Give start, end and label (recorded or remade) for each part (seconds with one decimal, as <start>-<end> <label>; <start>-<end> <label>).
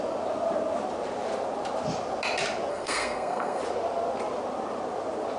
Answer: 0.0-2.7 recorded; 2.7-3.6 remade; 3.6-5.4 recorded